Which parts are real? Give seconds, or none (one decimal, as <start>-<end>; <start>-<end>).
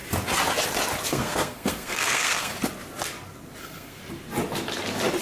0.0-1.1; 2.5-3.6; 4.0-5.2